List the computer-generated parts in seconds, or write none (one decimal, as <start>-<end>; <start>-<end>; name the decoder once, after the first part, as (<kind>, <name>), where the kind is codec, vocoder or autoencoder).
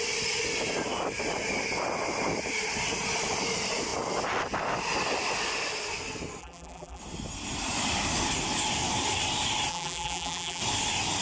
6.4-7.0 (vocoder, BigVGAN v2); 9.7-10.6